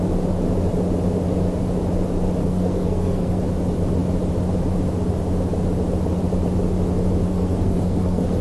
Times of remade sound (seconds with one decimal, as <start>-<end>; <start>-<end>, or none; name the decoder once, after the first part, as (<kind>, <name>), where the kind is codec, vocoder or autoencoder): 2.4-3.4 (codec, SNAC); 7.3-8.4